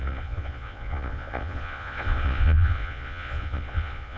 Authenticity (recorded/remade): remade